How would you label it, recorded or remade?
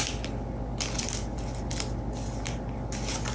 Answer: recorded